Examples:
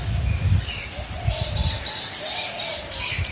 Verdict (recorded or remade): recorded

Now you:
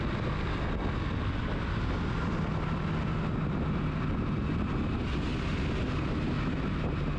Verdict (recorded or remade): recorded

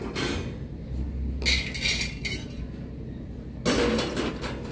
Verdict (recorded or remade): recorded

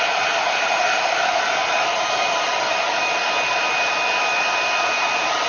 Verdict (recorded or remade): recorded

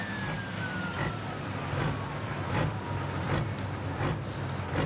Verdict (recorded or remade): recorded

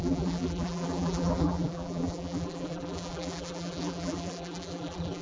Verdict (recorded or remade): remade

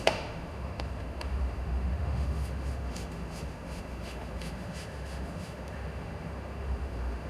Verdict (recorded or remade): remade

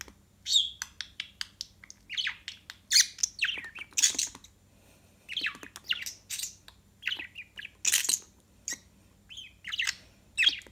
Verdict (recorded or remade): recorded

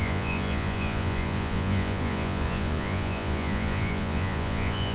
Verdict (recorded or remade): remade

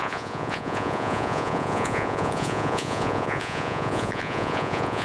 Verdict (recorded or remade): remade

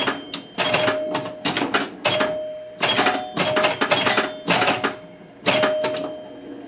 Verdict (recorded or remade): recorded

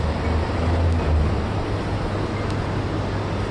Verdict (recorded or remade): recorded